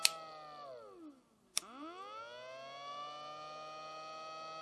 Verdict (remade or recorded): recorded